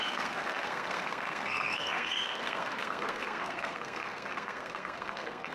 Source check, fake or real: fake